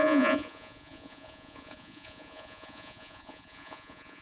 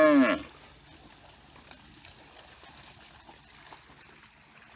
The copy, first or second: first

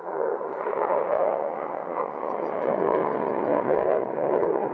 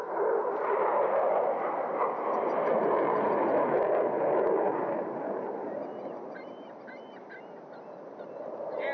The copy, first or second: first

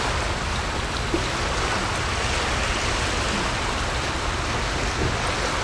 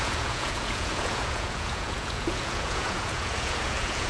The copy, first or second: second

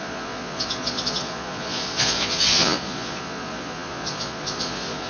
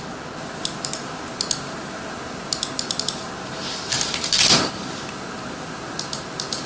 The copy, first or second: first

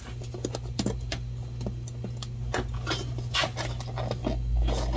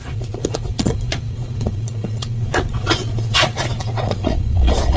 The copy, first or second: second